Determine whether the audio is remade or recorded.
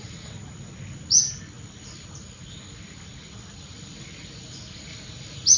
recorded